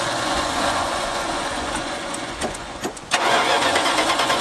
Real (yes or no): no